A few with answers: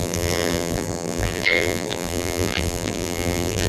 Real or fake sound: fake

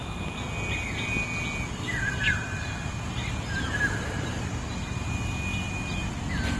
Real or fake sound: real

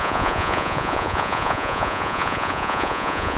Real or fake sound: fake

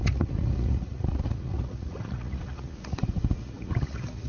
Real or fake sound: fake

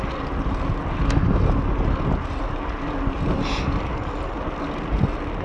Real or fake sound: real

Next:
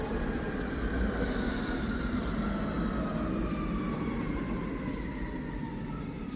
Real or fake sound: real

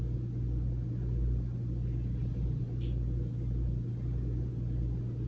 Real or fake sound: real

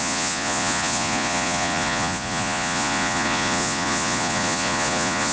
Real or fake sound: fake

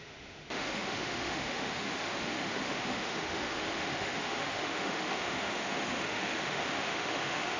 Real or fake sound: fake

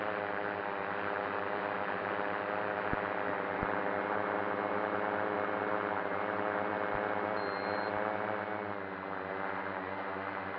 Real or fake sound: real